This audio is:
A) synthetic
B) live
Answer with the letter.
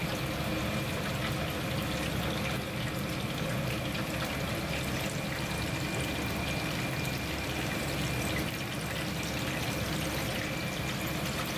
B